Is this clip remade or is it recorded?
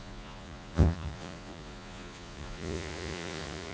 remade